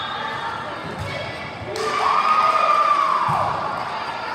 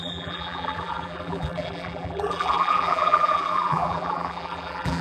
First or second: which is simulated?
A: second